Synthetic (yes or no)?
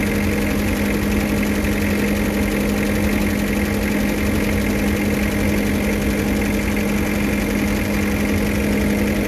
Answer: no